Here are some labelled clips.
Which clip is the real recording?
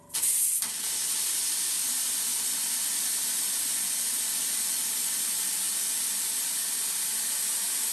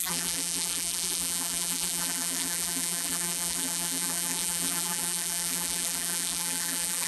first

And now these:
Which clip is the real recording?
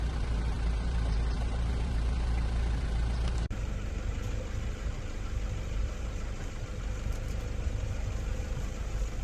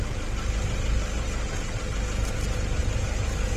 second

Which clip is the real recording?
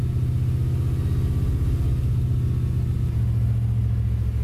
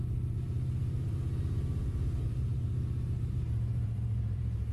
first